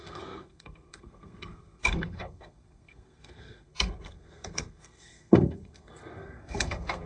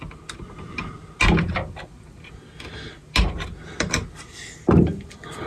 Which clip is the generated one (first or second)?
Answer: first